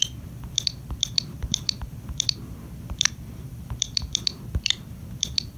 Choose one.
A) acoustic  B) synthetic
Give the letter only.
B